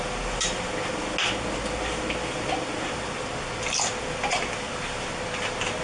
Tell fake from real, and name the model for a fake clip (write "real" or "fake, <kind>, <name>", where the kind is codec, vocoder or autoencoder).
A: real